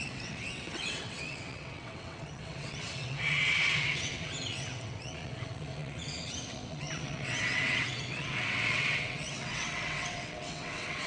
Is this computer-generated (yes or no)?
yes